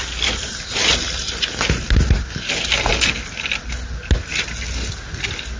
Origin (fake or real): real